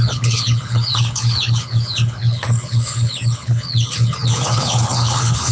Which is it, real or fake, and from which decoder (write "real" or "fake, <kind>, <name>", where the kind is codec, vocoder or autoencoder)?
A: fake, codec, HILCodec